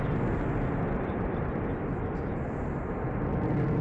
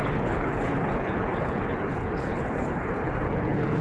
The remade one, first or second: second